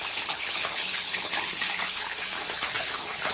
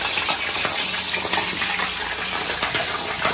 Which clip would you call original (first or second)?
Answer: second